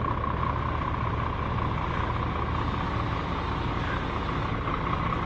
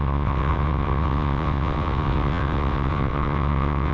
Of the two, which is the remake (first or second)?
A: second